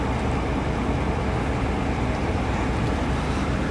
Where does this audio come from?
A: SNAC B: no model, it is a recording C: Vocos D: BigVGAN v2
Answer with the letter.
B